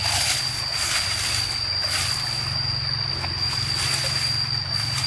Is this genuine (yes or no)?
yes